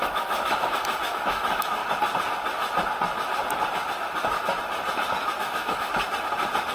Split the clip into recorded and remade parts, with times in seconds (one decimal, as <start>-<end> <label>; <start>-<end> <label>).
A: 0.0-1.8 remade; 1.8-5.4 recorded; 5.4-5.9 remade; 5.9-6.7 recorded